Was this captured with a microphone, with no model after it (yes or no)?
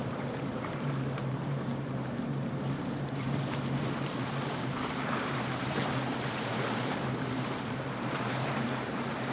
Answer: no